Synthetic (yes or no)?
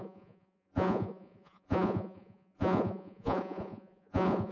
yes